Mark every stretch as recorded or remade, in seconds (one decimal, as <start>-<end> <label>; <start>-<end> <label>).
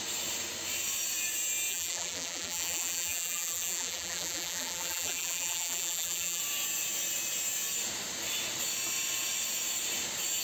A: 0.0-1.7 recorded; 1.7-6.4 remade; 6.4-10.4 recorded